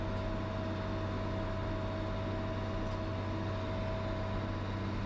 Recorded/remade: recorded